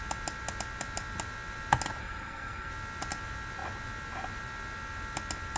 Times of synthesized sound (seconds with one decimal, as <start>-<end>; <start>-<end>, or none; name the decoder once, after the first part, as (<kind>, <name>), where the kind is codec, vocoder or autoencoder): 2.0-2.7 (codec, SNAC)